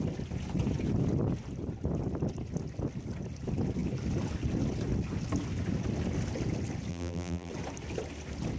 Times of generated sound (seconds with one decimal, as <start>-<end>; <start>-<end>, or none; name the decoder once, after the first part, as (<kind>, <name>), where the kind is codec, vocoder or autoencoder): 6.9-7.5 (vocoder, BigVGAN v2)